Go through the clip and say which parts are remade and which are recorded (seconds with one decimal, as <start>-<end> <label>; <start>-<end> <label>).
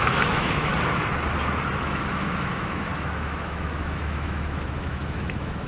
0.0-0.7 remade; 0.7-1.8 recorded; 1.8-5.7 remade